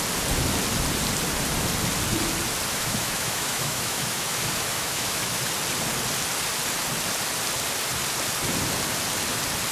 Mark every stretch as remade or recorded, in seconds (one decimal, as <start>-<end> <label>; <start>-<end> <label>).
0.0-2.7 recorded; 2.7-5.4 remade; 5.4-9.7 recorded